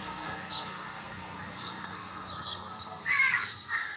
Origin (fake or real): fake